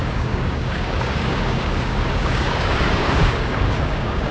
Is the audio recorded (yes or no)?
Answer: no